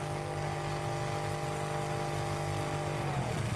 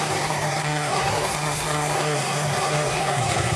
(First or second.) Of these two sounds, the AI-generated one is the second